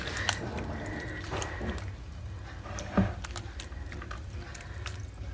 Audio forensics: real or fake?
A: real